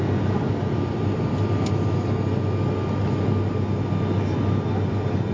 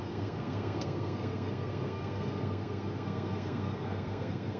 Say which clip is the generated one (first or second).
second